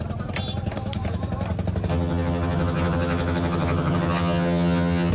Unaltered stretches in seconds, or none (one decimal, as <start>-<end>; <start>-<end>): 0.0-1.9